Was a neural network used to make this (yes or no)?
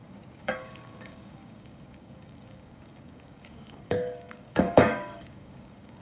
yes